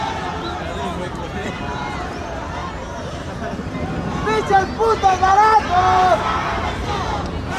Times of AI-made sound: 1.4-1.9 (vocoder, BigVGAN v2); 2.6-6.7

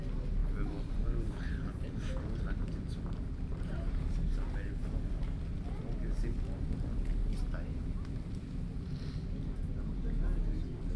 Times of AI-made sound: 0.4-2.1 (vocoder, BigVGAN v2); 7.2-8.4

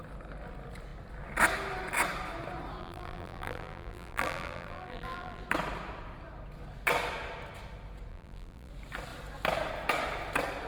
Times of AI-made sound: 2.8-5.4 (vocoder, BigVGAN v2); 8.1-8.7

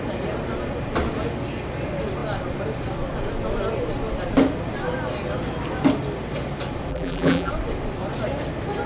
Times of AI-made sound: 6.9-7.5 (vocoder, BigVGAN v2)

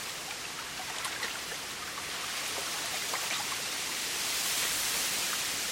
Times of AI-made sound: 3.4-5.7 (vocoder, BigVGAN v2)

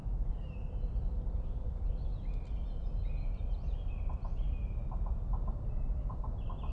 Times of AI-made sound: 0.0-2.1 (vocoder, BigVGAN v2); 5.5-6.7

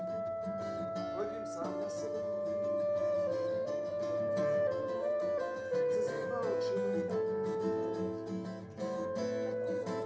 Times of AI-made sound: 3.0-5.4 (vocoder, BigVGAN v2)